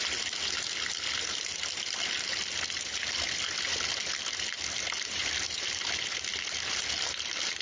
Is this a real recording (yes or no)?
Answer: yes